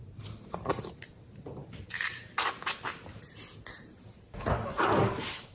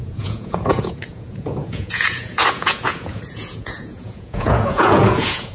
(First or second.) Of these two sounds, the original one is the first